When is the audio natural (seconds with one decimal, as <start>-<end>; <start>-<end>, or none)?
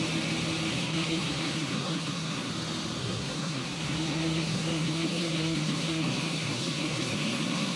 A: 0.0-0.7; 2.5-3.0